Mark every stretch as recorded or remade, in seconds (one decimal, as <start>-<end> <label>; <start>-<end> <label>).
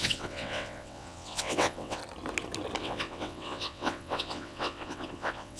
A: 0.0-2.0 remade; 2.0-2.8 recorded; 2.8-5.6 remade